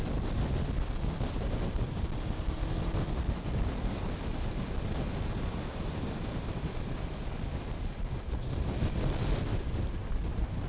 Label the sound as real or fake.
real